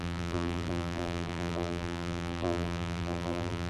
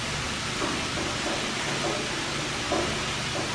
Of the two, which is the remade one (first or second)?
first